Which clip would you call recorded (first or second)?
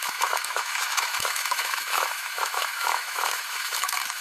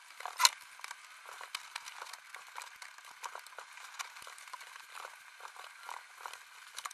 second